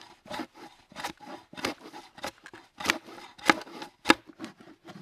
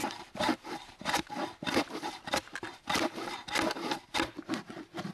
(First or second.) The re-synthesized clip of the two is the second